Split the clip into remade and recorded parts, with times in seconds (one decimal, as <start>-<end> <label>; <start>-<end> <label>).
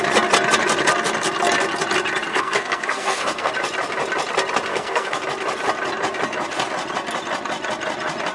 0.0-2.3 recorded; 2.3-3.5 remade; 3.5-4.7 recorded; 4.7-5.2 remade; 5.2-8.3 recorded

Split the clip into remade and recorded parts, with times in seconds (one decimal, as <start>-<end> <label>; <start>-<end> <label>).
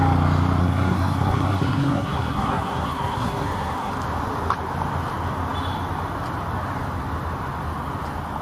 0.0-0.6 recorded; 0.6-3.9 remade; 3.9-8.4 recorded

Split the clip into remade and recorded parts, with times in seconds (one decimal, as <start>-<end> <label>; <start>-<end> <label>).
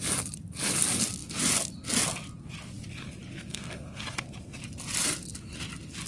0.0-3.3 recorded; 3.3-4.0 remade; 4.0-6.1 recorded